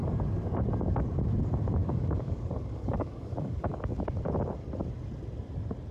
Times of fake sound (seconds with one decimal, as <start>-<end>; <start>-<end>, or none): 0.0-0.6; 1.8-4.1